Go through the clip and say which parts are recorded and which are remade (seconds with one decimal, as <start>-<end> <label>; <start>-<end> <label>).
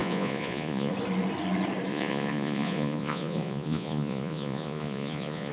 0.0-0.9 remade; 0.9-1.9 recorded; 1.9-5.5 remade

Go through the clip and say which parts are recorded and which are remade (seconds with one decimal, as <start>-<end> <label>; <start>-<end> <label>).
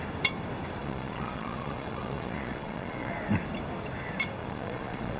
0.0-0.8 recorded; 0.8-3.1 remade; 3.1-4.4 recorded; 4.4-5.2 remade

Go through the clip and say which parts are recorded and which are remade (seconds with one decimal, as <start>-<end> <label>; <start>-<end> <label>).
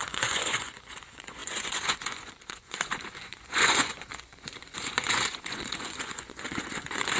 0.0-7.2 remade